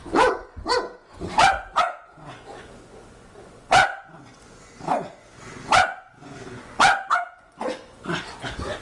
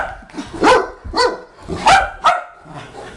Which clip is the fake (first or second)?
first